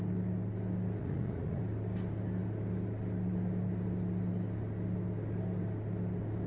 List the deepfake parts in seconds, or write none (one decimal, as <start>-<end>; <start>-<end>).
1.0-1.6